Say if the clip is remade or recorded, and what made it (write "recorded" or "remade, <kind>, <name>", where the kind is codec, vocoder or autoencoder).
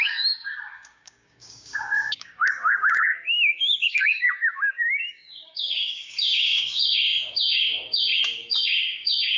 remade, codec, DAC